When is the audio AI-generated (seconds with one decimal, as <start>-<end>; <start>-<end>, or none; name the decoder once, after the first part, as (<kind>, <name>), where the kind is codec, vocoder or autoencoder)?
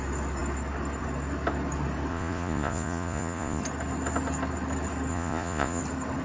2.1-3.6 (vocoder, Vocos); 5.1-5.8